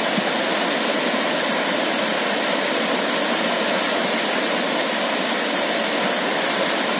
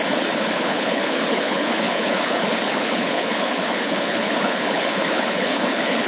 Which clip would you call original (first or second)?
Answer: first